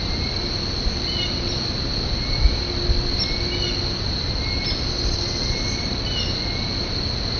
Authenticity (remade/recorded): recorded